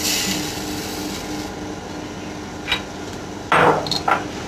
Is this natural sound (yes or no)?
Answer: yes